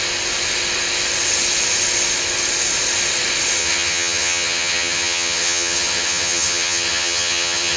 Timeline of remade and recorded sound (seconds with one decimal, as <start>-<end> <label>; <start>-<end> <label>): 0.0-3.6 recorded; 3.6-7.8 remade